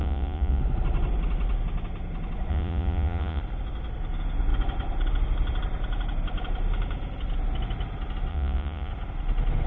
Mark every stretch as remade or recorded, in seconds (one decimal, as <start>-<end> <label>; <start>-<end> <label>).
0.0-0.6 remade; 0.6-2.5 recorded; 2.5-3.4 remade; 3.4-8.3 recorded; 8.3-8.9 remade; 8.9-9.7 recorded